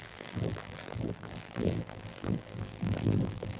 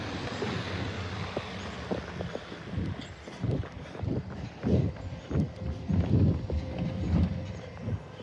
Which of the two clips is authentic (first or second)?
second